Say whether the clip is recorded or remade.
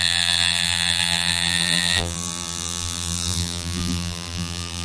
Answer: remade